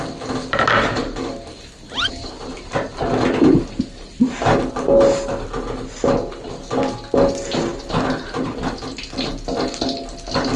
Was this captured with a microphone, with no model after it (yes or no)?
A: yes